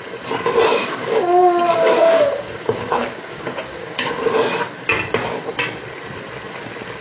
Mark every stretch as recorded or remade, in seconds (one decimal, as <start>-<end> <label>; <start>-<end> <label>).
0.0-0.7 recorded; 0.7-4.1 remade; 4.1-7.0 recorded